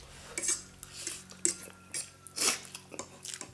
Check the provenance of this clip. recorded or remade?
recorded